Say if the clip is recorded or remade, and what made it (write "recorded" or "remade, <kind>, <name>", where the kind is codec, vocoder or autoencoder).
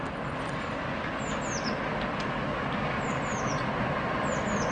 recorded